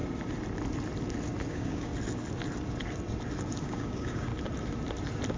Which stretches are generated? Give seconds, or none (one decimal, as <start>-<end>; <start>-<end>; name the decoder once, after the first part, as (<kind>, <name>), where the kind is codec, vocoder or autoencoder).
1.5-1.9 (codec, DAC); 3.6-4.3